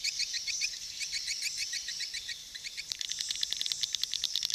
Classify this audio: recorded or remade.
remade